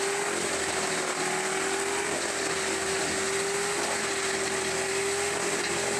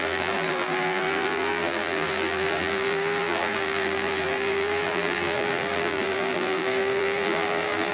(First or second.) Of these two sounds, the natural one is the first